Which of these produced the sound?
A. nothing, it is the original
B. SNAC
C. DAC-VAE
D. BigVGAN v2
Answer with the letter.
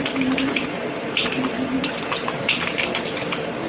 A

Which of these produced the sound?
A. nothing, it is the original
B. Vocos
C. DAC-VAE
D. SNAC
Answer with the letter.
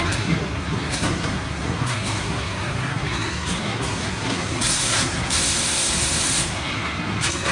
D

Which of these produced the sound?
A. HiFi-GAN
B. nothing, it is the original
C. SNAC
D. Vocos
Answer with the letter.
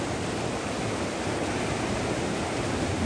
B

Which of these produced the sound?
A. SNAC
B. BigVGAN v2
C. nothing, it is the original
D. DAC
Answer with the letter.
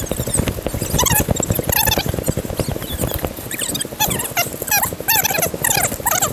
C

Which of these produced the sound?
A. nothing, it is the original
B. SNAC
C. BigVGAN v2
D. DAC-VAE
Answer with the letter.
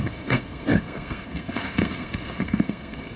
B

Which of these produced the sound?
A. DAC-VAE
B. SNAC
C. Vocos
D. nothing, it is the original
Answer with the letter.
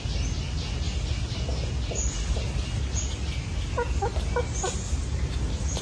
D